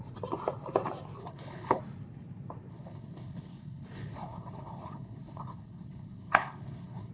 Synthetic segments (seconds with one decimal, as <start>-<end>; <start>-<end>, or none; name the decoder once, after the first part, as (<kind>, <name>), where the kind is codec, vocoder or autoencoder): 1.2-1.8 (codec, HILCodec); 2.7-7.1